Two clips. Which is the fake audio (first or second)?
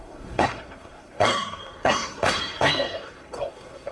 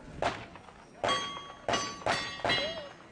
first